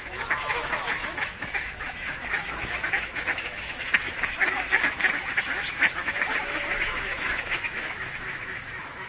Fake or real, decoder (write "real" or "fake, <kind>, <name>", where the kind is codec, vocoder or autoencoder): fake, autoencoder, DAC-VAE